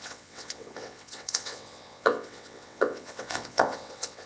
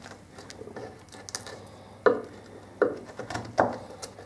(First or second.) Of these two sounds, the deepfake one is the first